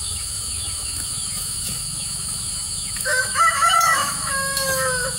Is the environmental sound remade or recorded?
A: remade